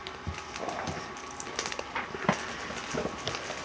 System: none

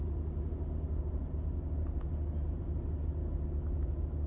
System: none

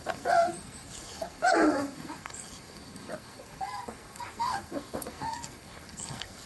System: codec, SNAC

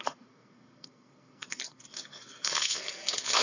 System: codec, SNAC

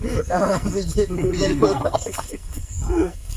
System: codec, SNAC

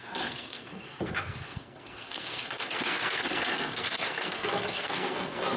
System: codec, SNAC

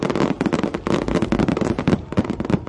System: none